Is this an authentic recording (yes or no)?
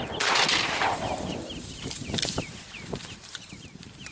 no